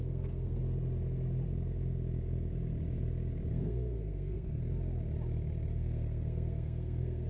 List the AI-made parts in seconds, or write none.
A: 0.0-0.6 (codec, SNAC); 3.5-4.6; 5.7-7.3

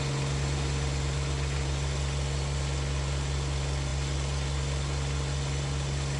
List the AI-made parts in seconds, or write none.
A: none

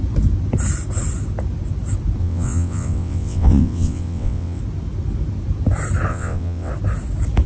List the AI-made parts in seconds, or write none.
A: 2.2-4.6 (vocoder, WaveNeXt); 6.1-6.7